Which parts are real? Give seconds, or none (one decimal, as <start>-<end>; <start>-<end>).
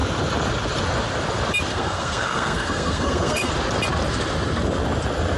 0.0-1.7; 3.5-5.4